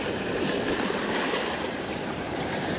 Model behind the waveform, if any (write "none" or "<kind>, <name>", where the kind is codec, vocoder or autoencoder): vocoder, BigVGAN v2